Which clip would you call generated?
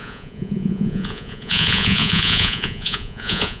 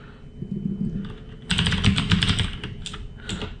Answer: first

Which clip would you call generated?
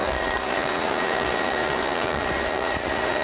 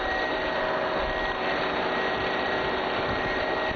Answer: first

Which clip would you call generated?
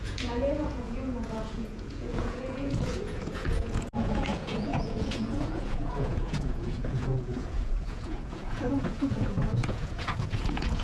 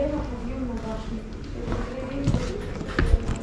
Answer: first